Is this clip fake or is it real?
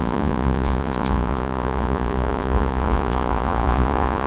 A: fake